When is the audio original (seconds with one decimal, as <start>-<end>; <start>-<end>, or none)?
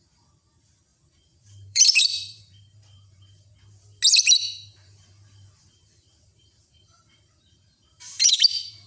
0.0-0.9; 3.5-4.8